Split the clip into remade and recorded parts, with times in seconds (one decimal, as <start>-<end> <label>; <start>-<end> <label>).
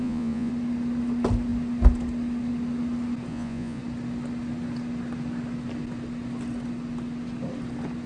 0.0-0.5 remade; 0.5-3.3 recorded; 3.3-3.8 remade; 3.8-8.1 recorded